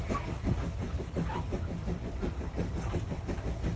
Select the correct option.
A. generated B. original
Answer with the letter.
B